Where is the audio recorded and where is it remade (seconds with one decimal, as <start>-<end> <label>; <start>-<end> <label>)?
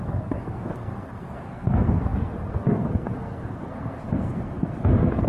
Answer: 0.0-5.3 remade